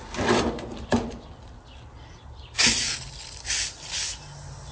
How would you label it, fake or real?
real